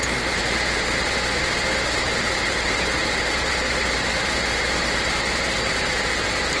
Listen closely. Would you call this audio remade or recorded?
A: remade